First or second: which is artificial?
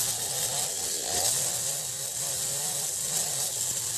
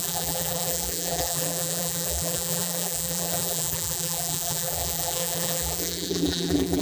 second